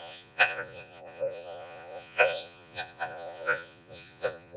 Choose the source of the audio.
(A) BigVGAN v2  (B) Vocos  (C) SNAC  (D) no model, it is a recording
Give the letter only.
B